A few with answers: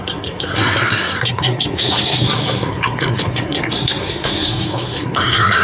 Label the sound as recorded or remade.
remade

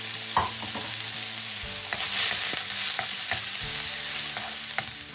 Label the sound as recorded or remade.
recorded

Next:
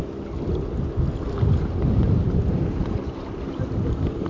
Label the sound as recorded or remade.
recorded